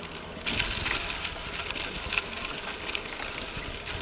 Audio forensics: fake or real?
real